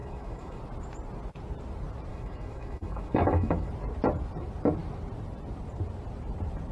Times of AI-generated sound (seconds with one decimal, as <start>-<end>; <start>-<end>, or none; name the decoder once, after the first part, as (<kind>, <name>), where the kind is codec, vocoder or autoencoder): 0.0-0.6 (autoencoder, DAC-VAE); 2.1-3.7